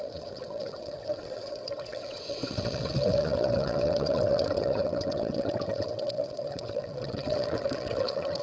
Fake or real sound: fake